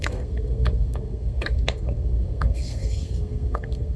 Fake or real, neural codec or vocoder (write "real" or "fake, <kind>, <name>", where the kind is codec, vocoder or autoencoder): fake, codec, SNAC